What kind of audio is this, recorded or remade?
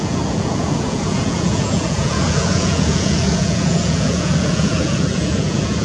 remade